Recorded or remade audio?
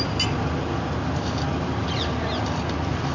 recorded